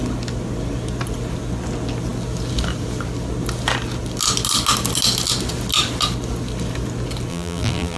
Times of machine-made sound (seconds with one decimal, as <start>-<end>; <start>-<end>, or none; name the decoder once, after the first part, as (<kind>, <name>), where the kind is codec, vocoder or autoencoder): 7.3-8.0 (vocoder, BigVGAN v2)